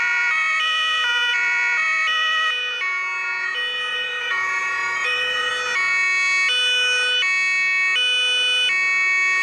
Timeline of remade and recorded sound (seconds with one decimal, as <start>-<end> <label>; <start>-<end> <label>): 0.0-3.9 recorded; 3.9-5.5 remade; 5.5-9.4 recorded